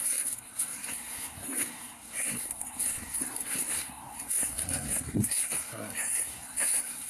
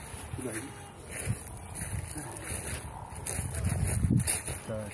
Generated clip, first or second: first